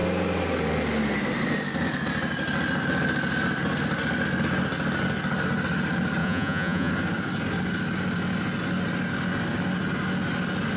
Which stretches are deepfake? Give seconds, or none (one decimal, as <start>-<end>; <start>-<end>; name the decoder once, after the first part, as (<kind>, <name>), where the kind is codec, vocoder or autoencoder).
6.2-6.9 (vocoder, Vocos)